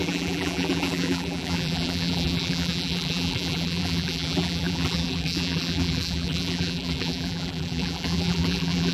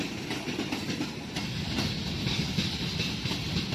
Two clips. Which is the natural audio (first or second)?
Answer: second